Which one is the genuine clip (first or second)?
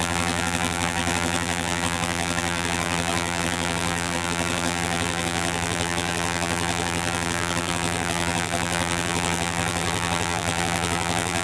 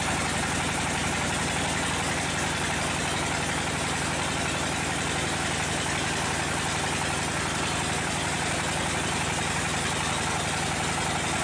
second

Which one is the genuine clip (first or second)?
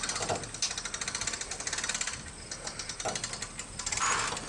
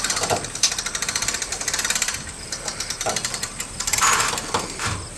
first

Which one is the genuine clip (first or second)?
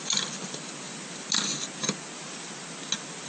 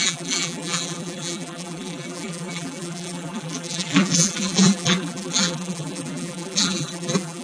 first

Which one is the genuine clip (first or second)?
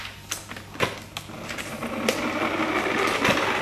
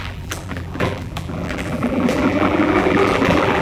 first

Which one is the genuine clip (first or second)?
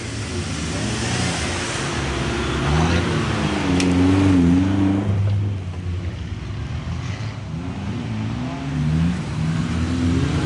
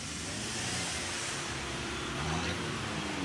first